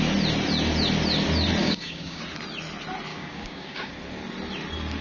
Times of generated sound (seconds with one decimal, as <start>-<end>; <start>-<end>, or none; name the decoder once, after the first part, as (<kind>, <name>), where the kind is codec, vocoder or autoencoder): 1.6-2.2 (codec, DAC); 3.1-3.9